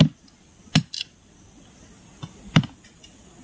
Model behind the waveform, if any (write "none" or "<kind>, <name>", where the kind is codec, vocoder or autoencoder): none